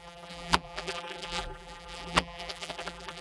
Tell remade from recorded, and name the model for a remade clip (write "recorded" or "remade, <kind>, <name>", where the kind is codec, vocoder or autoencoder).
remade, vocoder, BigVGAN v2